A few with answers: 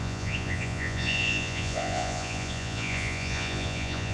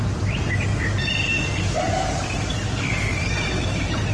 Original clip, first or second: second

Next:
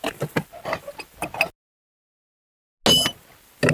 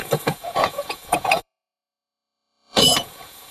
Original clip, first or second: first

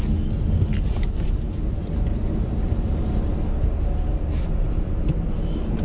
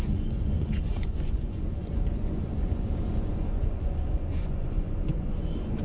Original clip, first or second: first